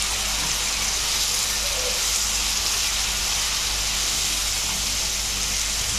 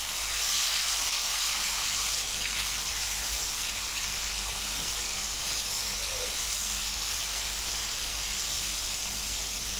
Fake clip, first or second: second